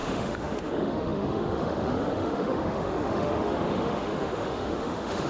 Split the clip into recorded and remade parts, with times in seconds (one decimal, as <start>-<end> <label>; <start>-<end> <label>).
0.0-5.3 remade